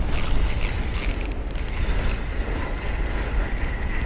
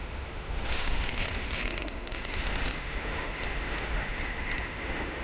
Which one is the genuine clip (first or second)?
first